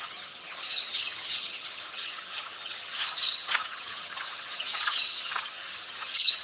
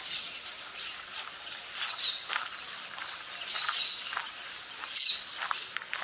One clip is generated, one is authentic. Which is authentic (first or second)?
second